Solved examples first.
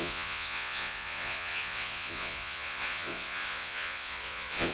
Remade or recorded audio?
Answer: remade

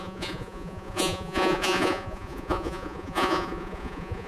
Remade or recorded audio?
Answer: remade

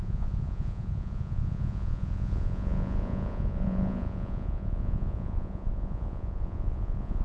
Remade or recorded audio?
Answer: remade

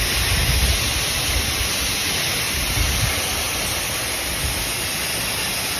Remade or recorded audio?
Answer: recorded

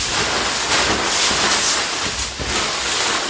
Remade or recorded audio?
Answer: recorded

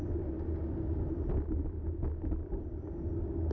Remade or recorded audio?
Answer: recorded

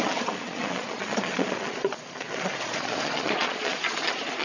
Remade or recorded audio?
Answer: remade